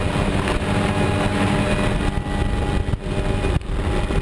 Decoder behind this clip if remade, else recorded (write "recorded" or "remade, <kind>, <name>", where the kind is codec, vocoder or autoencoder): recorded